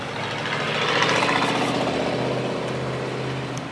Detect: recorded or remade recorded